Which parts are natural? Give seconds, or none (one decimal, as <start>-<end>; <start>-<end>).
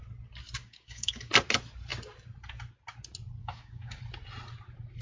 0.0-0.6; 1.3-3.4; 4.0-5.0